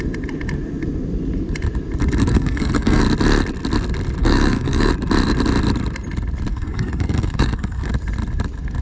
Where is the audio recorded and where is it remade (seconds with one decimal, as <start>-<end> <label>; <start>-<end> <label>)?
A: 0.0-2.2 recorded; 2.2-3.0 remade; 3.0-4.2 recorded; 4.2-4.9 remade; 4.9-6.5 recorded; 6.5-7.9 remade; 7.9-8.8 recorded